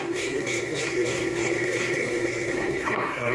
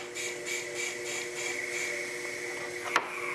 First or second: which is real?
second